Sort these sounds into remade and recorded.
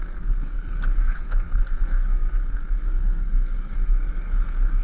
remade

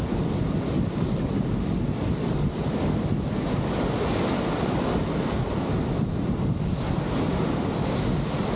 recorded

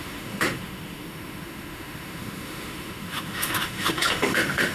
remade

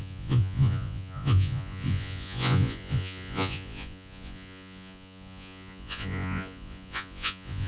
remade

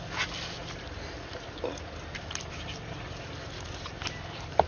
recorded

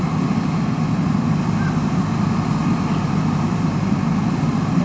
recorded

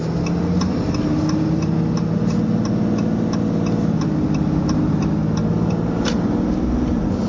recorded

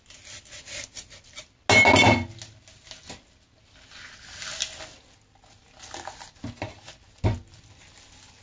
recorded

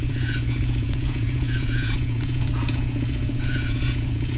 remade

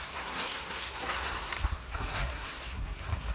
remade